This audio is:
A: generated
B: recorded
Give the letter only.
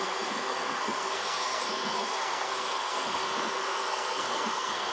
A